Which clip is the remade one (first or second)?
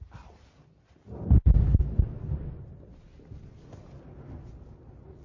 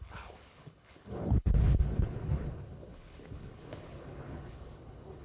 second